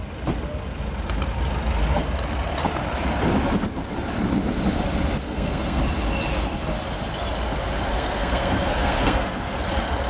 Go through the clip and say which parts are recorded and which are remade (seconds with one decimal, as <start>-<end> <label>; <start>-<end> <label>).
0.0-5.2 recorded; 5.2-5.8 remade; 5.8-7.9 recorded; 7.9-9.6 remade; 9.6-10.1 recorded